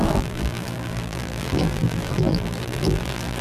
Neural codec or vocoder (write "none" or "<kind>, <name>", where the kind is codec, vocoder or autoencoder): vocoder, BigVGAN v2